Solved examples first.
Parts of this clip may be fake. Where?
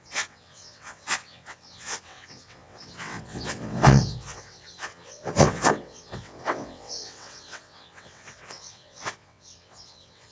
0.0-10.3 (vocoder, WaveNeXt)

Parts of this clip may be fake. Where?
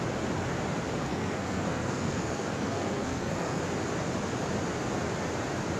1.0-3.6 (codec, SNAC)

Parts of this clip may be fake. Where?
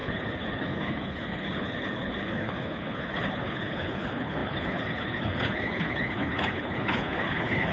0.0-7.7 (codec, HILCodec)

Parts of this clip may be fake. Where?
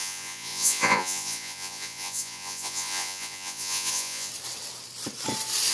0.0-4.3 (vocoder, Vocos)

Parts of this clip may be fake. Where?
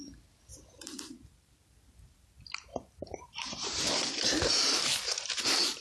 0.5-1.2 (vocoder, BigVGAN v2); 2.7-3.9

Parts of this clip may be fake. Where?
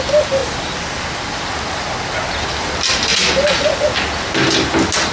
none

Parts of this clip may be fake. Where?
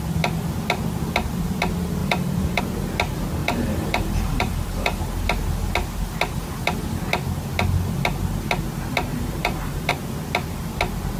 2.0-2.6 (vocoder, BigVGAN v2); 3.4-5.0; 9.1-9.9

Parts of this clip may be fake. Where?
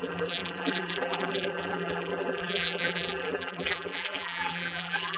0.0-5.2 (vocoder, BigVGAN v2)